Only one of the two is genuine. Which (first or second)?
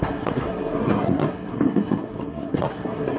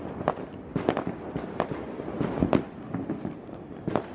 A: second